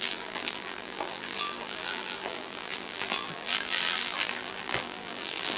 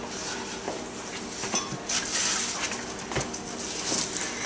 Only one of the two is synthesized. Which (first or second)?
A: first